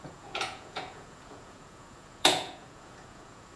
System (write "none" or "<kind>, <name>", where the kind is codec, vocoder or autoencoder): vocoder, Vocos